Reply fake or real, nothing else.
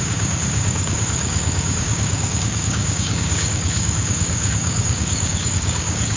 fake